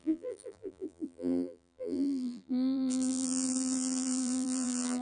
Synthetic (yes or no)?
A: yes